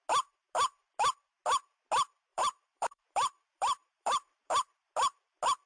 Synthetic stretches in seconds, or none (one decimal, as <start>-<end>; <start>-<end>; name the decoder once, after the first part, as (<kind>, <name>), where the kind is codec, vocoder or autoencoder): 2.3-4.5 (vocoder, BigVGAN v2)